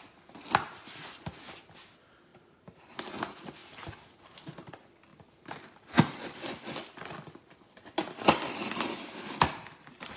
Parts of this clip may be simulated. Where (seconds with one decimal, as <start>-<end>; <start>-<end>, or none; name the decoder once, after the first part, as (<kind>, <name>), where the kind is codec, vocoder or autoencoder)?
2.3-3.1 (vocoder, BigVGAN v2); 3.6-4.2